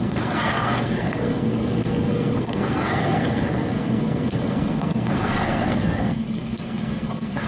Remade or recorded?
remade